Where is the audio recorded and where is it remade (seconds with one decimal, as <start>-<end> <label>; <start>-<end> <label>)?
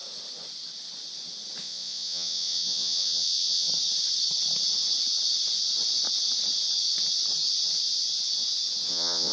0.0-1.6 recorded; 1.6-3.7 remade; 3.7-8.9 recorded; 8.9-9.3 remade